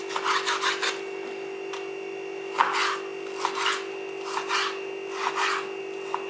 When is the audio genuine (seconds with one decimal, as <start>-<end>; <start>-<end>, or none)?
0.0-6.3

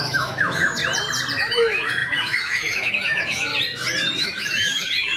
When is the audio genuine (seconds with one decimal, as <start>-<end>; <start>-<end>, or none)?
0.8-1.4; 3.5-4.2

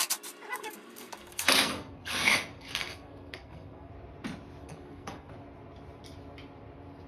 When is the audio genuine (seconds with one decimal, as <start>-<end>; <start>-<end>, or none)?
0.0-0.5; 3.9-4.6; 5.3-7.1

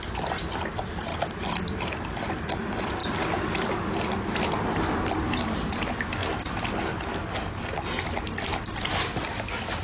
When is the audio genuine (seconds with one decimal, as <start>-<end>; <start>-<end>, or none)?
0.0-9.8

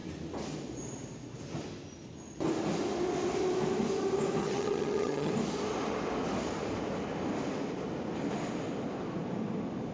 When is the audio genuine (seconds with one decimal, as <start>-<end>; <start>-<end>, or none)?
0.0-4.4; 5.3-9.9

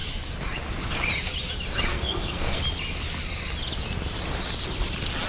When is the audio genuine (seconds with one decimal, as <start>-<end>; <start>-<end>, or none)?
0.0-1.9; 2.6-5.3

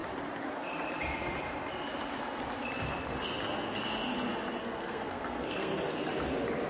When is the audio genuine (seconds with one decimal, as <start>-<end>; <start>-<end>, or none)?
0.0-4.6; 5.9-6.7

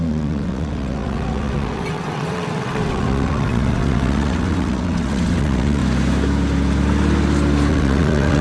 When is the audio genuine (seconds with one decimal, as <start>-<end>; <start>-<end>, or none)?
5.8-7.7